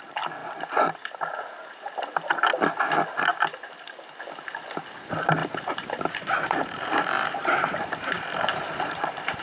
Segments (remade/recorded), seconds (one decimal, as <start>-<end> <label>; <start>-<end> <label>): 0.0-5.4 recorded; 5.4-9.4 remade